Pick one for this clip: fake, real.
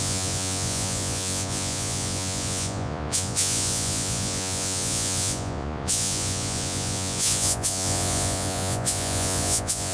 fake